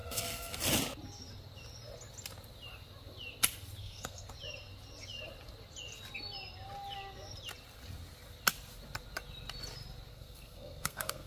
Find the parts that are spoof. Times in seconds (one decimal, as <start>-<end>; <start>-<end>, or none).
0.0-0.6; 3.8-4.3; 10.1-11.3